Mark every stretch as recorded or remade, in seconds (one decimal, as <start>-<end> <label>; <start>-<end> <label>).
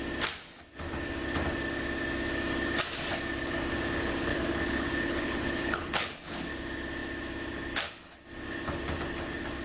0.0-4.3 recorded; 4.3-6.5 remade; 6.5-9.6 recorded